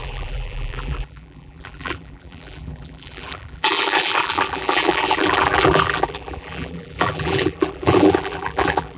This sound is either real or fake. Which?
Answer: fake